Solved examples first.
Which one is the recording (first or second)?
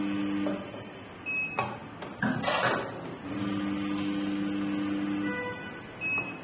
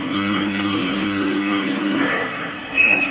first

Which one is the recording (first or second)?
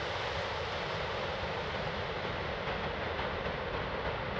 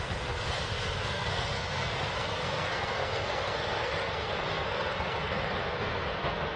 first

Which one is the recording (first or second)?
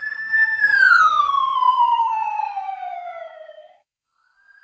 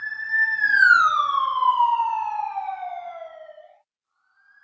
second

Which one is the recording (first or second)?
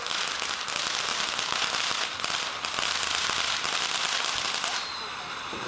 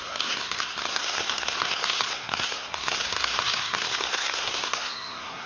first